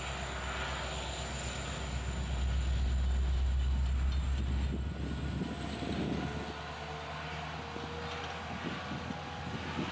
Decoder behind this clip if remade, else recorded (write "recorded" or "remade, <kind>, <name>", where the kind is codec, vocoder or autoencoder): recorded